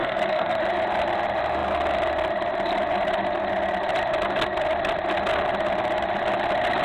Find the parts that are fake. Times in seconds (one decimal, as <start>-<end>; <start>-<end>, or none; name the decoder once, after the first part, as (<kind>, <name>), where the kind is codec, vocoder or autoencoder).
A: 0.0-0.6 (codec, SNAC)